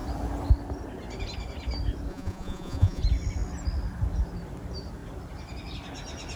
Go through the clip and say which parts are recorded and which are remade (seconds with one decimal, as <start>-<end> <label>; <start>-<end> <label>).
0.0-2.1 recorded; 2.1-3.0 remade; 3.0-6.4 recorded